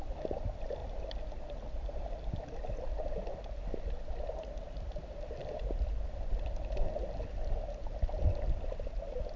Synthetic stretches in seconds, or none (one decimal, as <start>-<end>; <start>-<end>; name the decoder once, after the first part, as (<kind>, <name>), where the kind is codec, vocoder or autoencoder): none